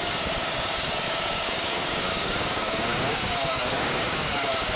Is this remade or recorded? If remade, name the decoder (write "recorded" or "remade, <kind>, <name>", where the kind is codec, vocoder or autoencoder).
remade, codec, DAC